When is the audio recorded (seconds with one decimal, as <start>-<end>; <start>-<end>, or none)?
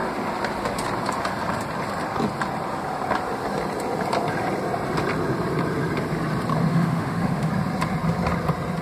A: 0.0-6.7; 7.5-8.8